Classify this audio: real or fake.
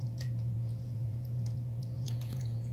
fake